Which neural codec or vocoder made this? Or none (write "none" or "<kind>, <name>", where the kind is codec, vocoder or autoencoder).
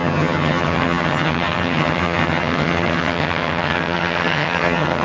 vocoder, HiFi-GAN